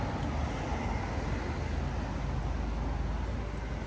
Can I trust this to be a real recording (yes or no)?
yes